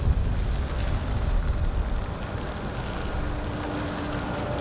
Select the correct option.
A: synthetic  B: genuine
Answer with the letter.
B